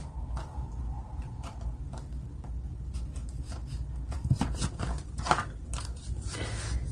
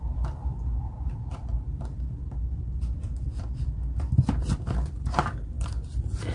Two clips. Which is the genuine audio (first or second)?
first